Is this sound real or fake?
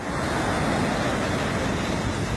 real